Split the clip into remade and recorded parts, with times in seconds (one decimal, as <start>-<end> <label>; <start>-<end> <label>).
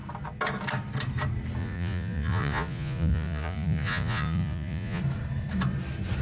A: 0.0-1.6 recorded; 1.6-5.0 remade; 5.0-6.2 recorded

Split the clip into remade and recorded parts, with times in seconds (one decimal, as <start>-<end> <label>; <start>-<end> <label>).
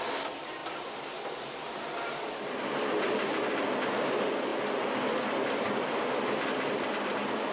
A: 0.0-0.6 remade; 0.6-4.1 recorded; 4.1-4.5 remade; 4.5-5.5 recorded; 5.5-7.5 remade